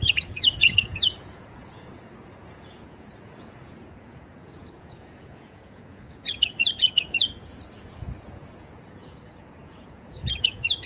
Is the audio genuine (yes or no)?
no